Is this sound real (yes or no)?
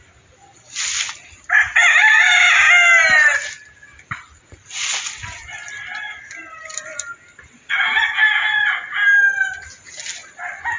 yes